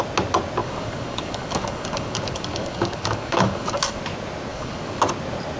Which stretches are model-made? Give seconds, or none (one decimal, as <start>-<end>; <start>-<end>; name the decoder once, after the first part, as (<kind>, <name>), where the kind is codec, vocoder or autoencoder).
0.6-4.0 (codec, DAC); 4.5-5.0